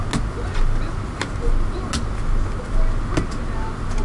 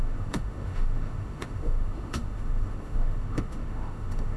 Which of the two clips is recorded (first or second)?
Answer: first